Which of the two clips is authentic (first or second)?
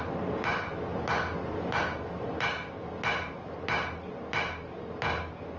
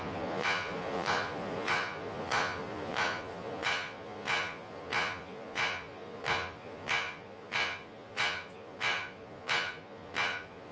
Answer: first